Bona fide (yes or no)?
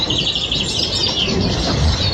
yes